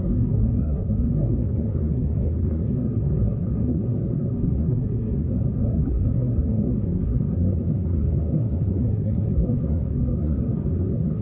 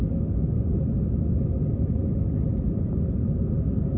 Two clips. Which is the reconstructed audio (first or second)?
first